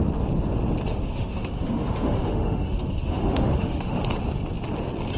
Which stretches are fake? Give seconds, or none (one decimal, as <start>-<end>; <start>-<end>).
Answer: 0.9-4.0